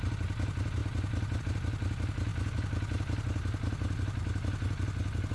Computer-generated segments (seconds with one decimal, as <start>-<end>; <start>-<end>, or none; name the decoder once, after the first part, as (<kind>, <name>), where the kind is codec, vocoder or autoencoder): none